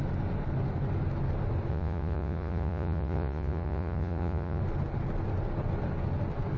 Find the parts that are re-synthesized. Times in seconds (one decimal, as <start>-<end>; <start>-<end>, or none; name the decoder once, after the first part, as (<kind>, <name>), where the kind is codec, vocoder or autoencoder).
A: 1.7-4.6 (vocoder, Vocos)